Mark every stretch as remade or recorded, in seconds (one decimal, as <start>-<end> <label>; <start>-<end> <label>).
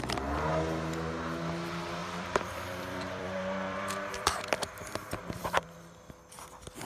0.0-2.0 recorded; 2.0-6.1 remade; 6.1-6.9 recorded